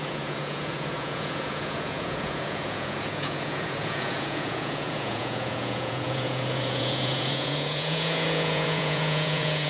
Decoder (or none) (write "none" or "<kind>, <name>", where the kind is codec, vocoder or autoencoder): vocoder, Vocos